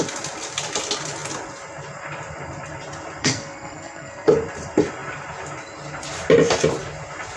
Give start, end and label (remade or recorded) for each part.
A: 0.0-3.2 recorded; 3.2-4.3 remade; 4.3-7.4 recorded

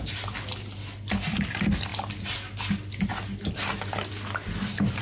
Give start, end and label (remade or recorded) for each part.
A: 0.0-5.0 recorded

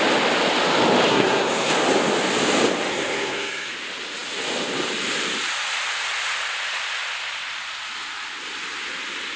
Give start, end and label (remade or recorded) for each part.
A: 0.0-1.1 recorded; 1.1-1.7 remade; 1.7-2.9 recorded; 2.9-3.7 remade; 3.7-9.4 recorded

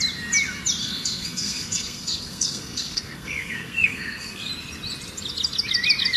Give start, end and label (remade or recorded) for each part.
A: 0.0-0.8 recorded; 0.8-4.5 remade; 4.5-6.2 recorded

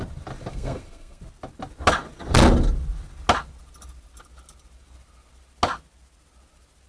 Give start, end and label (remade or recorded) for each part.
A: 0.0-0.5 recorded; 0.5-1.2 remade; 1.2-6.9 recorded

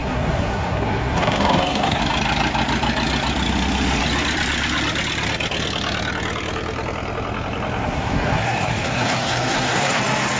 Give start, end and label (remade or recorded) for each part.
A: 0.0-2.0 remade; 2.0-7.8 recorded; 7.8-10.0 remade; 10.0-10.4 recorded